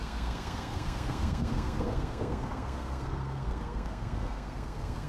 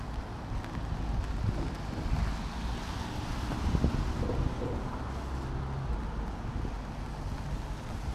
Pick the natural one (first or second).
second